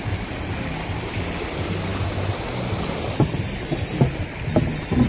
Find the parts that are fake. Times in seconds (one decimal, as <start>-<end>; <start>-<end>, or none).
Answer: none